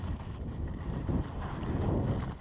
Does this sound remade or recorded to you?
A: recorded